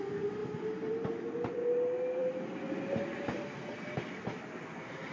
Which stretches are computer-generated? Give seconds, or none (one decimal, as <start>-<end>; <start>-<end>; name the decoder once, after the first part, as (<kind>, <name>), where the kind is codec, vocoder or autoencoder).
none